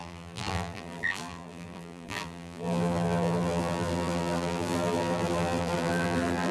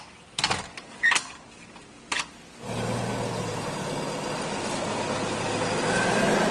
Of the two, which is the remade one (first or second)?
first